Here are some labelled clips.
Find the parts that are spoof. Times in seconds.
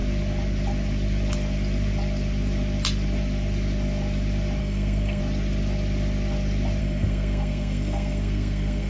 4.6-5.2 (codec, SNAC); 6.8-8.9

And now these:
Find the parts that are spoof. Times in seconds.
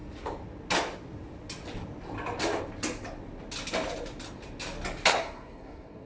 5.1-6.1 (codec, SNAC)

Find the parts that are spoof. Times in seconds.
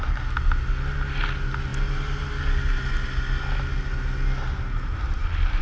none